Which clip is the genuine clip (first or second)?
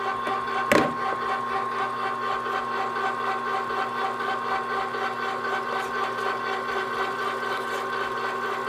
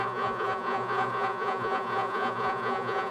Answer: first